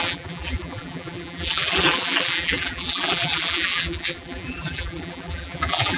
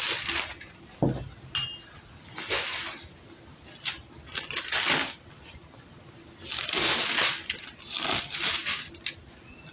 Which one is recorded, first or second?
second